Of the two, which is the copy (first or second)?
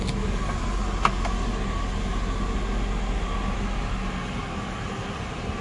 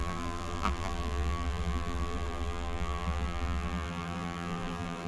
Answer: second